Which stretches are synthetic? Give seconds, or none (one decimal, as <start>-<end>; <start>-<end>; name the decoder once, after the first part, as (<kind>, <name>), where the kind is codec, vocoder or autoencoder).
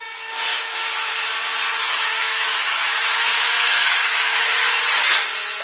0.5-1.3 (autoencoder, DAC-VAE); 1.8-4.8